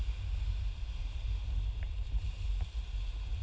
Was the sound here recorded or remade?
recorded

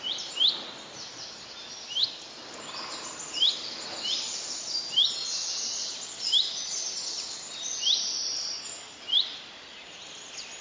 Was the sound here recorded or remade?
recorded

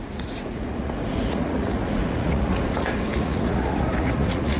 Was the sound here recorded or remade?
remade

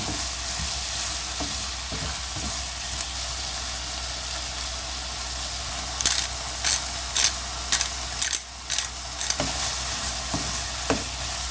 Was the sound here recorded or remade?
recorded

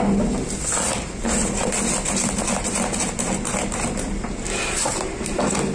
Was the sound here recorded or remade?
recorded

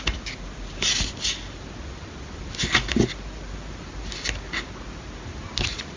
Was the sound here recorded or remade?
recorded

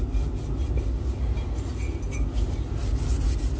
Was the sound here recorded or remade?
recorded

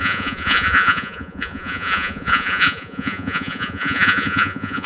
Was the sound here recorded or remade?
remade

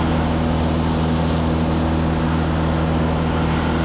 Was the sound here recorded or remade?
recorded